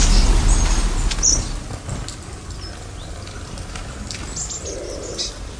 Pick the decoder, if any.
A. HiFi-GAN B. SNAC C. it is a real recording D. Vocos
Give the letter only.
C